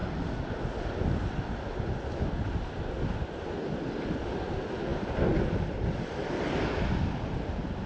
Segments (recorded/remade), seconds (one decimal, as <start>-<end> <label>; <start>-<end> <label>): 0.0-7.9 recorded